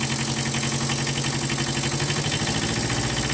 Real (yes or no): yes